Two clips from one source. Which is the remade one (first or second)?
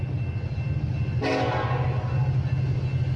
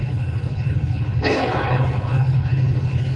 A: second